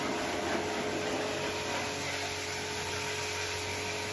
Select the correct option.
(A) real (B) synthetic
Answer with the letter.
A